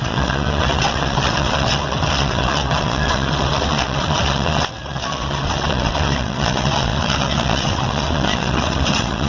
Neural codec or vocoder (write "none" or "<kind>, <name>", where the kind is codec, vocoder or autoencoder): vocoder, WaveNeXt